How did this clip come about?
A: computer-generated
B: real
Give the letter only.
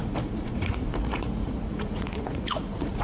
A